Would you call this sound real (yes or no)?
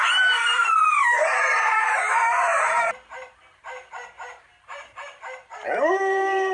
no